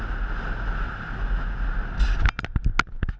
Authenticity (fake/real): real